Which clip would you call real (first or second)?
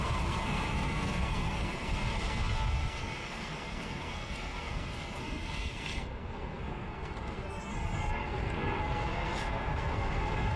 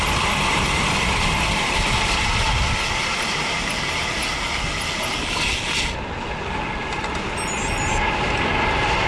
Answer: second